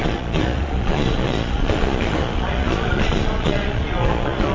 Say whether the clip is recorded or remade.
remade